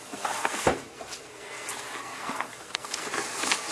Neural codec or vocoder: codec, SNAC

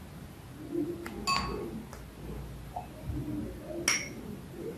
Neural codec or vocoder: none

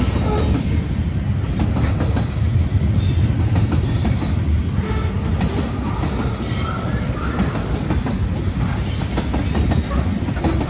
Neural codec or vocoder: none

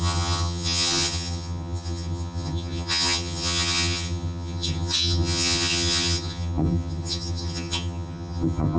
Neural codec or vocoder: vocoder, HiFi-GAN